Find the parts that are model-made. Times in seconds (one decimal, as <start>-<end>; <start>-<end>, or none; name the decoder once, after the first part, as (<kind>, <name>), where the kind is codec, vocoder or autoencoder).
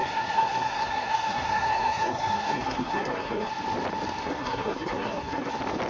0.0-3.5 (codec, SNAC); 4.2-5.5